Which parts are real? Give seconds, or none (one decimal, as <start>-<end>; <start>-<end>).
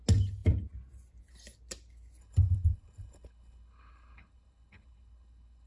0.0-2.2